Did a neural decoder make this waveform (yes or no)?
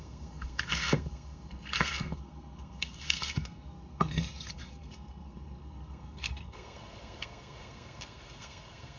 yes